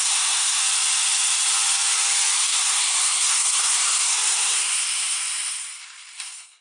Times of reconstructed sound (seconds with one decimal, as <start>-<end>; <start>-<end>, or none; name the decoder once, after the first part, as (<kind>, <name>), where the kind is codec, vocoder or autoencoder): 0.0-0.6 (codec, SNAC); 2.4-6.6